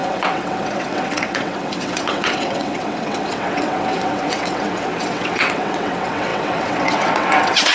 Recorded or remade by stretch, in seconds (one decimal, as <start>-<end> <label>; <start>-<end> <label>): 0.0-7.7 remade